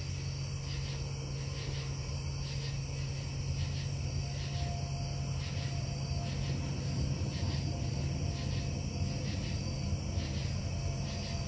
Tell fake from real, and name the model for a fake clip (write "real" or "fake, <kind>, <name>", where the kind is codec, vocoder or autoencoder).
real